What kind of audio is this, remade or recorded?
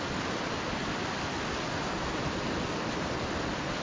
recorded